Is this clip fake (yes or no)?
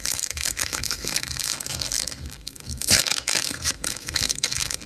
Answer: yes